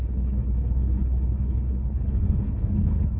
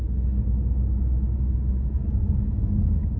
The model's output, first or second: first